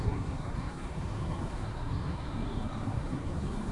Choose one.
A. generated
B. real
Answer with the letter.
A